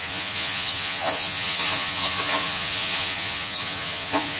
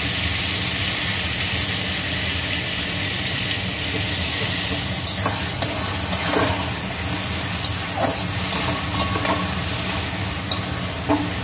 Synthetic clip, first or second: first